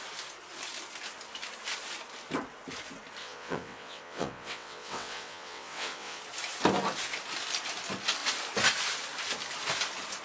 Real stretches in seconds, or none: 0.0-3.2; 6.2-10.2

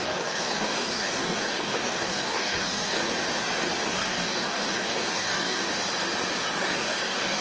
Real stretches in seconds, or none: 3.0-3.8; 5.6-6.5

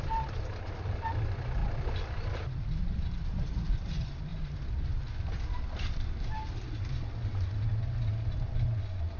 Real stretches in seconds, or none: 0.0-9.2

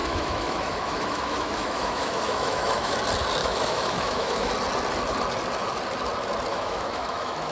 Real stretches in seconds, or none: 3.0-3.4; 4.5-6.5

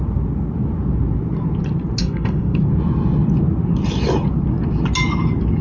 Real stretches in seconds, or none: 0.0-2.0; 2.6-5.6